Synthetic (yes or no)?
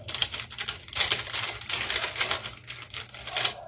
no